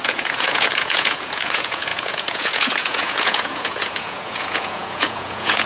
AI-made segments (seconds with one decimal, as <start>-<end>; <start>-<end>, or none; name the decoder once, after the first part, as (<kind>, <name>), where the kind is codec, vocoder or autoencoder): 0.0-5.7 (vocoder, Vocos)